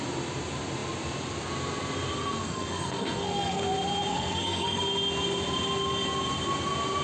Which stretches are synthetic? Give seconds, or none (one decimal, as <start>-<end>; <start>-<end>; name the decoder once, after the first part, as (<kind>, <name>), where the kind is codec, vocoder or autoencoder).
2.2-3.6 (codec, SNAC); 4.1-4.8